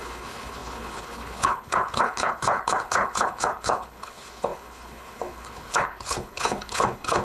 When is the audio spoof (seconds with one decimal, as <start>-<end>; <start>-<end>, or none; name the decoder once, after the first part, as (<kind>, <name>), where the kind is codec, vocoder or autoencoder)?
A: 0.0-7.2 (codec, HILCodec)

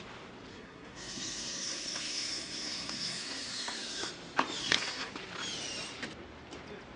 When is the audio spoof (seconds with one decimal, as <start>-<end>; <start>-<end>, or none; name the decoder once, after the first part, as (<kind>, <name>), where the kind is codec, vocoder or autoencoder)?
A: 0.5-4.1 (codec, SNAC); 4.6-5.1

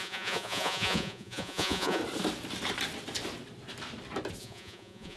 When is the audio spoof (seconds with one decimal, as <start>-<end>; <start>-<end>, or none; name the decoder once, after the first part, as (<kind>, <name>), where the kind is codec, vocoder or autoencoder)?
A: 0.0-2.0 (vocoder, Vocos); 4.4-5.2

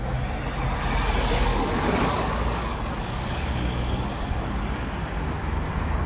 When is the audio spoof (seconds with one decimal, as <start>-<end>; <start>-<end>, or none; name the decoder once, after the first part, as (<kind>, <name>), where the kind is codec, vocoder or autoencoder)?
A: 1.5-5.0 (codec, DAC)

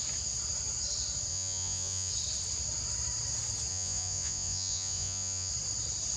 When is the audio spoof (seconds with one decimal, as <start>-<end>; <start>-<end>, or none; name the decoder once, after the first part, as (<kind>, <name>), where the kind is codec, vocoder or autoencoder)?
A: 1.3-2.1 (vocoder, Vocos); 3.7-5.5

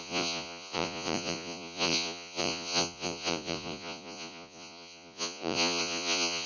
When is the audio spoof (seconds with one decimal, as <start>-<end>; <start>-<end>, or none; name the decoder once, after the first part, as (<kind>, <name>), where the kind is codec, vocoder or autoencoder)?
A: 0.0-6.5 (vocoder, Vocos)

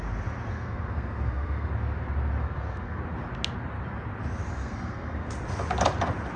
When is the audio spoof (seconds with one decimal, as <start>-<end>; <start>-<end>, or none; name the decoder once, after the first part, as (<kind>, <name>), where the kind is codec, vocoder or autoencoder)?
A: 0.5-1.7 (codec, SNAC); 2.4-3.0; 4.6-5.3

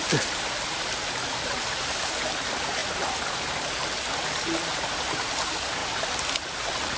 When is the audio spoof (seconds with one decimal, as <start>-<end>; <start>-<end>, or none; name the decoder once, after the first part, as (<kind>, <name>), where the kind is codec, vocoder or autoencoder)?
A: none